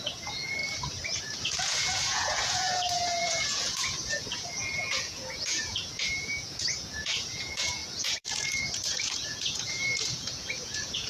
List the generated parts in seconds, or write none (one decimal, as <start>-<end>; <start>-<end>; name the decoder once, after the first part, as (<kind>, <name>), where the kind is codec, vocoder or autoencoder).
0.0-0.6 (vocoder, Vocos); 1.2-11.1